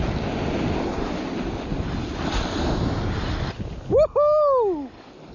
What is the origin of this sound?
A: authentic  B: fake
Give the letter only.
A